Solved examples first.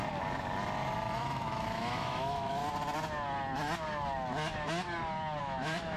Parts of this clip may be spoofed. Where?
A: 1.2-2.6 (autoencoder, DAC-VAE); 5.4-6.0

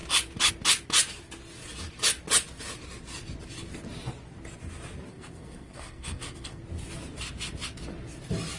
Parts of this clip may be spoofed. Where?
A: 5.1-6.6 (codec, SNAC)

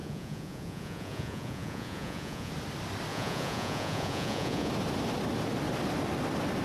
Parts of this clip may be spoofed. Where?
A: 0.0-2.5 (vocoder, Vocos); 3.1-4.7

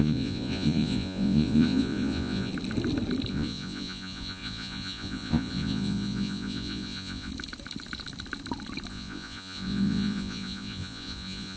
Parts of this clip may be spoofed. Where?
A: 0.0-2.5 (vocoder, Vocos); 3.3-7.3; 8.9-11.6

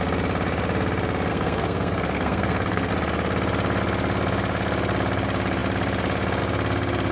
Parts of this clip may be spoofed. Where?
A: 1.3-2.9 (codec, SNAC)

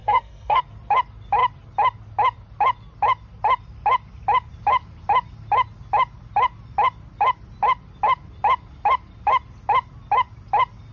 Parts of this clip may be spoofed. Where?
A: 0.0-0.6 (codec, SNAC)

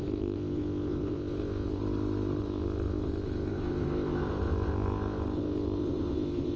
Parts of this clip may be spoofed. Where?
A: 0.0-1.8 (codec, ZipCodec); 2.4-6.6

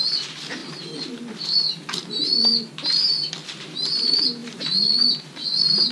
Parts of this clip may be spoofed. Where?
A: none